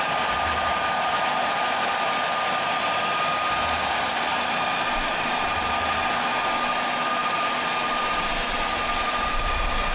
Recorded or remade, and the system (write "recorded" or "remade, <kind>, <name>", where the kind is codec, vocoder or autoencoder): recorded